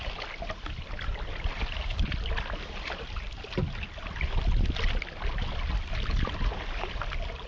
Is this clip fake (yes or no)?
no